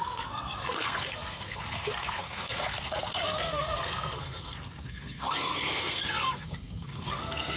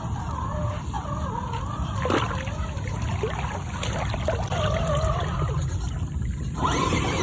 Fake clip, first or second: first